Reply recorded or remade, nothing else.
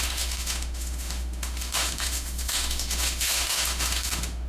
remade